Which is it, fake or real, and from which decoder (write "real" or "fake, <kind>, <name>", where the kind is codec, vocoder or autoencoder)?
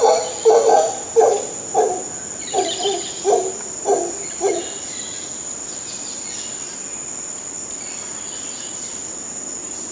real